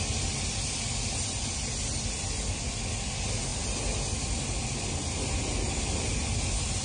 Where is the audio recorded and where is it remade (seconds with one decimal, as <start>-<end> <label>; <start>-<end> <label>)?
0.0-6.8 recorded